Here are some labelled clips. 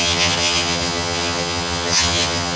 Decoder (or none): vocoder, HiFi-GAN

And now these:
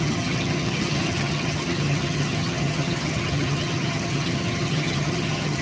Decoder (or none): vocoder, HiFi-GAN